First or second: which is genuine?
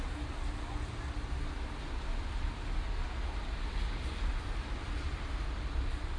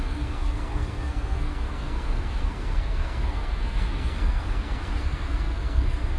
first